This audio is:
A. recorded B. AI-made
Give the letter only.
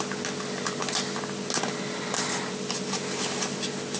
A